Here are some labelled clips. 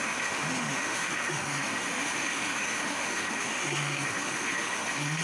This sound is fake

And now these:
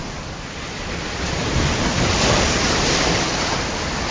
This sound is real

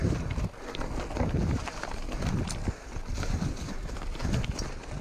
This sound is real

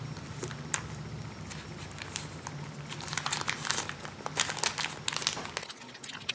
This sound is real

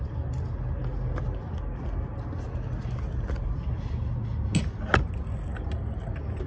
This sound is real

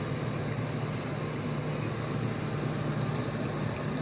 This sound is real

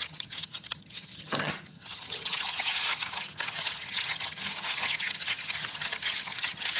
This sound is fake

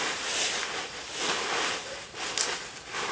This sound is real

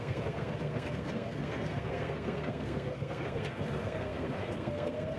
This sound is fake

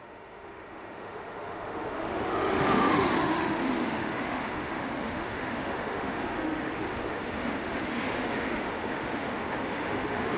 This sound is fake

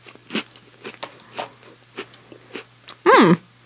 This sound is real